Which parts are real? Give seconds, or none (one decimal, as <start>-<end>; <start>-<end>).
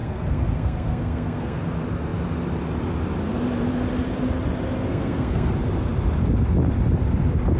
1.6-4.9; 5.5-7.6